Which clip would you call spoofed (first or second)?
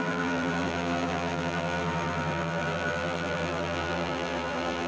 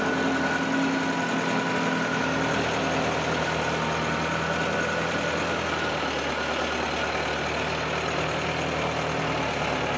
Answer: first